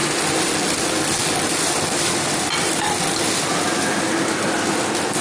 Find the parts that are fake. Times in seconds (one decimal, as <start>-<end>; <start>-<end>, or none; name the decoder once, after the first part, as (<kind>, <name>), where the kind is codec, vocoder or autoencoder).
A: none